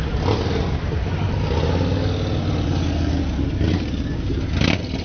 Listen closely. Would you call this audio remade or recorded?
recorded